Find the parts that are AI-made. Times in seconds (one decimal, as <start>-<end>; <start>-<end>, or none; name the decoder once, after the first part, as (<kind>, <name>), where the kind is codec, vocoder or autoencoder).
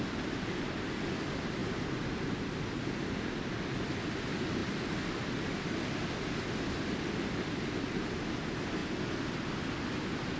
none